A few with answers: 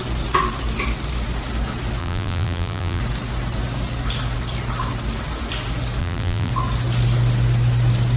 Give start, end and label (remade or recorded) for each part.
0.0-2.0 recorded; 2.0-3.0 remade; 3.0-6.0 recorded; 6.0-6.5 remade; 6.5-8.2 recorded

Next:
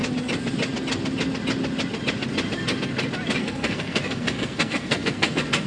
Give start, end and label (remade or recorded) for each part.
0.0-3.4 recorded; 3.4-5.7 remade